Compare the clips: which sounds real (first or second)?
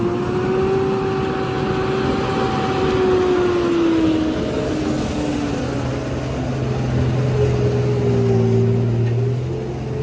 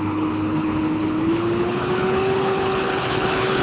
first